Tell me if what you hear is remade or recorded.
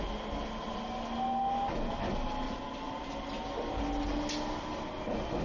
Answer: recorded